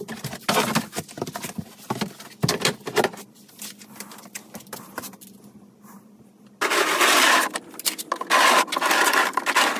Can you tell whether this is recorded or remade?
recorded